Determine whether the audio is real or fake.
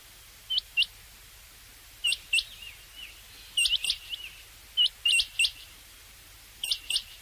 real